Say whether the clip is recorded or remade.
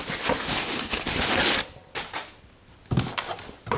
recorded